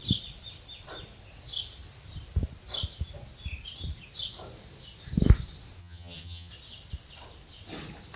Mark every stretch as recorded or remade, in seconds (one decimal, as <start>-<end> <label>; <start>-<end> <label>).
0.0-5.8 recorded; 5.8-6.5 remade; 6.5-8.2 recorded